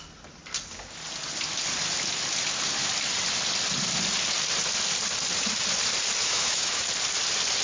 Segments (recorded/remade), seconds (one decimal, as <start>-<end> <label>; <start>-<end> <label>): 0.0-6.2 recorded; 6.2-6.8 remade; 6.8-7.6 recorded